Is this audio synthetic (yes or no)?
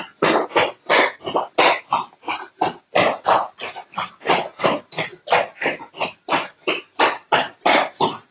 no